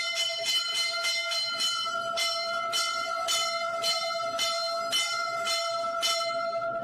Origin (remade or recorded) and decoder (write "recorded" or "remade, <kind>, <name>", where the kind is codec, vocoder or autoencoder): recorded